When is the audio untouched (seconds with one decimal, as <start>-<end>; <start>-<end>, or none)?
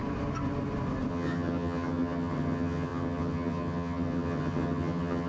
0.0-1.1